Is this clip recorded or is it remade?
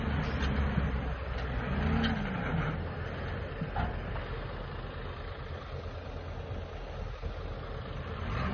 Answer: recorded